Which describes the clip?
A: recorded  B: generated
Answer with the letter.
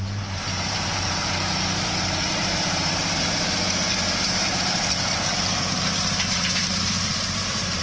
B